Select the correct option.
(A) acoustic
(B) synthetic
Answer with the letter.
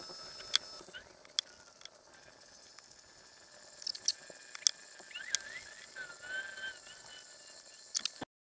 A